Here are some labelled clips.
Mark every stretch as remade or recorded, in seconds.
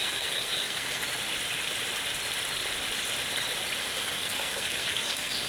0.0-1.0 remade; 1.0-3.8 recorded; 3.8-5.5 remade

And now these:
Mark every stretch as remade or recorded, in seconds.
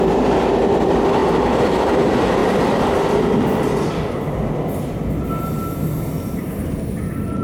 0.0-7.4 recorded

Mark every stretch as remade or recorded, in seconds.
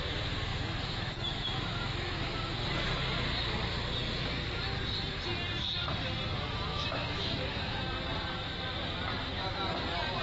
0.0-0.5 recorded; 0.5-2.5 remade; 2.5-6.7 recorded; 6.7-7.8 remade; 7.8-10.2 recorded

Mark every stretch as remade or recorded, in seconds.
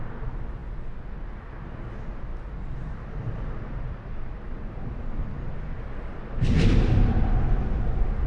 0.0-2.3 recorded; 2.3-6.9 remade; 6.9-8.3 recorded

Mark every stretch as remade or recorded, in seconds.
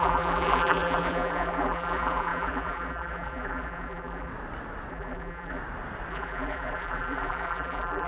0.0-4.3 remade; 4.3-4.9 recorded; 4.9-5.6 remade; 5.6-6.1 recorded; 6.1-8.1 remade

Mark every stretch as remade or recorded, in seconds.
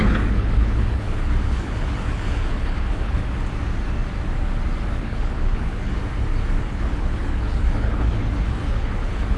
0.0-3.2 remade; 3.2-4.9 recorded; 4.9-6.0 remade; 6.0-6.6 recorded; 6.6-9.4 remade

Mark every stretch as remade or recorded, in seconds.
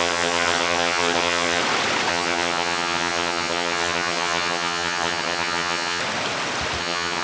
0.0-1.6 remade; 1.6-2.1 recorded; 2.1-6.0 remade; 6.0-6.8 recorded; 6.8-7.2 remade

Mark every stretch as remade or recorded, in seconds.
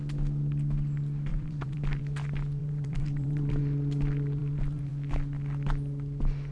0.0-1.3 recorded; 1.3-2.0 remade; 2.0-2.6 recorded; 2.6-3.6 remade; 3.6-4.4 recorded; 4.4-4.9 remade; 4.9-6.5 recorded